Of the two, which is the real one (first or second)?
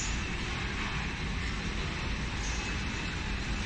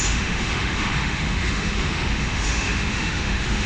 first